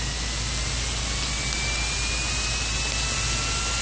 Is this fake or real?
real